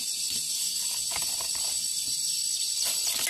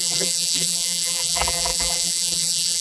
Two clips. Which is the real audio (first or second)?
first